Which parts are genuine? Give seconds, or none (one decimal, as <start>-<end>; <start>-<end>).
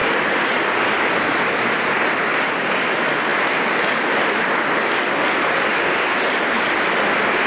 0.0-7.5